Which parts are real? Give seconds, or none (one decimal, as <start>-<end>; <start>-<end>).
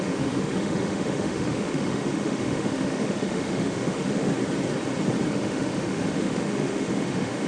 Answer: 4.3-5.3